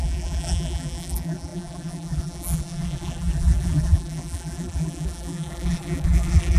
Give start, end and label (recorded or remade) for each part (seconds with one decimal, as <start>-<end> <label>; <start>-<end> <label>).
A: 0.0-6.6 remade